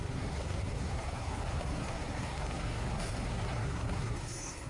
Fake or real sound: fake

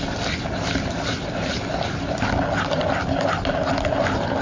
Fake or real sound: real